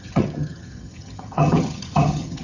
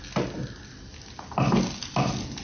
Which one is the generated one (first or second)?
first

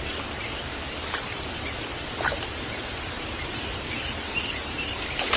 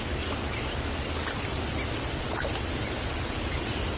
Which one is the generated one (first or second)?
first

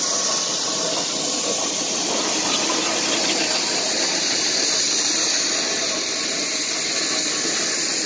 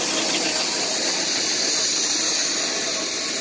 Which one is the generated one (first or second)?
first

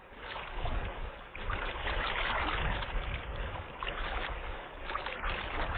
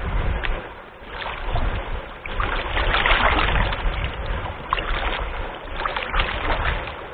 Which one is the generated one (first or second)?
first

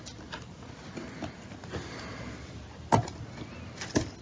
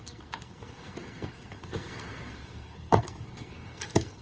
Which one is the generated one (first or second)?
second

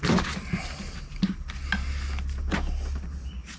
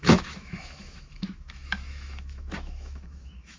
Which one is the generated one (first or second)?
second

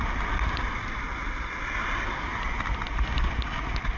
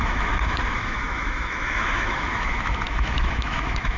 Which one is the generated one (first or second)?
second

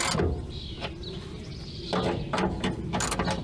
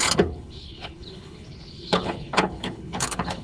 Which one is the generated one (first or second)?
second